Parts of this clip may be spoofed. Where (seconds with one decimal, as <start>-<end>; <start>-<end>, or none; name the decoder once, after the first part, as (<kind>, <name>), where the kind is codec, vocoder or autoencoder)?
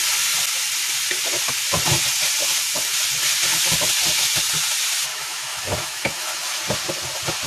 5.1-6.6 (autoencoder, DAC-VAE)